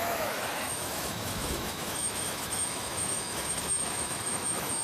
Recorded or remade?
remade